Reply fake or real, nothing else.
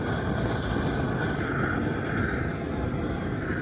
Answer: real